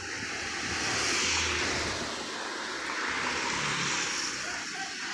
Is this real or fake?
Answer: real